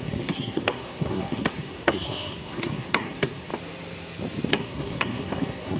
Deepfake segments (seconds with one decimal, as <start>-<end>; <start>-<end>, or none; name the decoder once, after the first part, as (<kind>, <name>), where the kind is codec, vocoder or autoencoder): 0.0-3.5 (codec, SNAC); 4.5-5.8